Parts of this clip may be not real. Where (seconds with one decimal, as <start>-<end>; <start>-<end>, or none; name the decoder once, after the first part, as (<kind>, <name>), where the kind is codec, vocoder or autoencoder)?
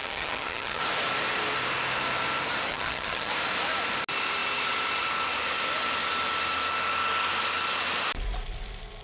0.0-0.8 (vocoder, HiFi-GAN); 2.7-3.3